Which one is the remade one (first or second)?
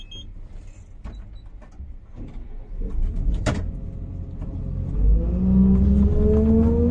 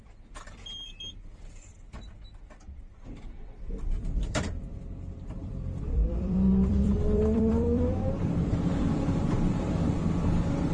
second